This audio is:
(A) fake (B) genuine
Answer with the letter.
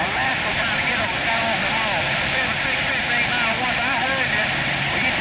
B